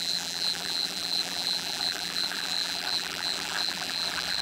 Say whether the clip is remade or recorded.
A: remade